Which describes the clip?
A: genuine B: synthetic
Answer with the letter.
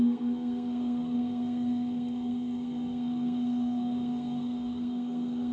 B